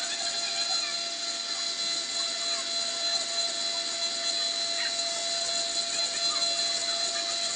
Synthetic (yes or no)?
no